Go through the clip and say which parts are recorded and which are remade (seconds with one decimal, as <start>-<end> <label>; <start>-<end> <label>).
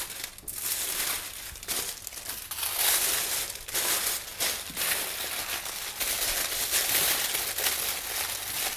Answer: 0.0-8.8 recorded